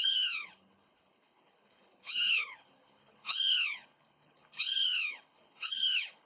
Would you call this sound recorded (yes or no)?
no